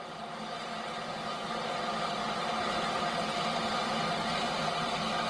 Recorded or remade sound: recorded